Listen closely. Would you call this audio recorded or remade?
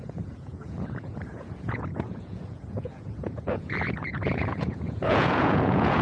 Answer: remade